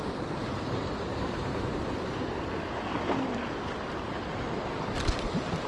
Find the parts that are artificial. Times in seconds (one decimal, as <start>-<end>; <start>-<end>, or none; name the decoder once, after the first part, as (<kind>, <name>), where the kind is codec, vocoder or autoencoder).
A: none